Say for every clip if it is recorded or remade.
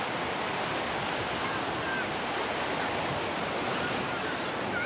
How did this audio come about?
recorded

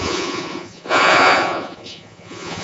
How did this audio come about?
remade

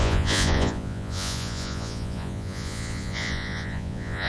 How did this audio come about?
remade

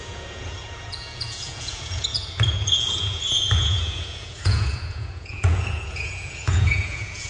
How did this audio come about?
remade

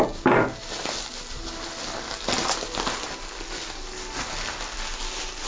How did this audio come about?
recorded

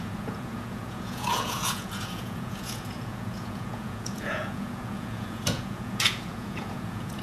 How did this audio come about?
remade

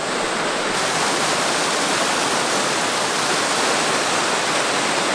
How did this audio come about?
recorded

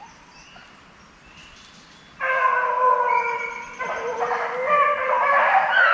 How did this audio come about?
recorded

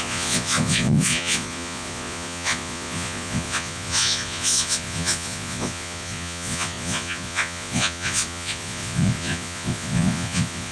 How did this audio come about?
remade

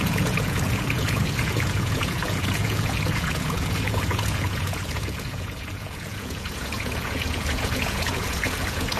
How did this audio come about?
remade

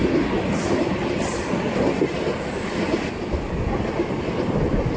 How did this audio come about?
recorded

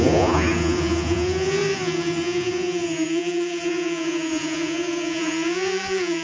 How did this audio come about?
remade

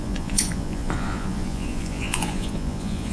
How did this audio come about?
remade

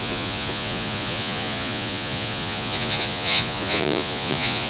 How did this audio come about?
remade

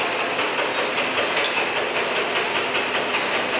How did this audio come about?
recorded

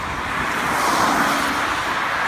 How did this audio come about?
recorded